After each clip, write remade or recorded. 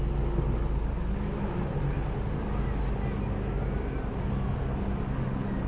recorded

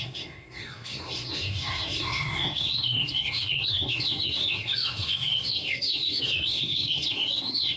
remade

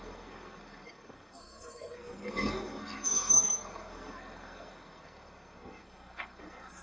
remade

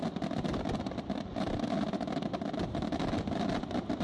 recorded